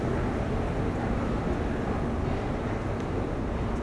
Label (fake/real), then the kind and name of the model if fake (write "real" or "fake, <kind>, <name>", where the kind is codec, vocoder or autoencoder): real